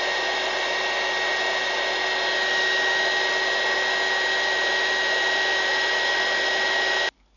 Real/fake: real